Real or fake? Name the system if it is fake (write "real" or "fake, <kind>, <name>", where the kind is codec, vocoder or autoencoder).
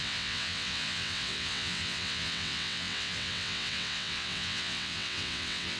fake, vocoder, WaveNeXt